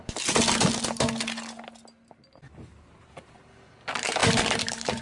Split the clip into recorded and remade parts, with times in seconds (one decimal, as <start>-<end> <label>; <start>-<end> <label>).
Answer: 0.0-4.2 recorded; 4.2-5.0 remade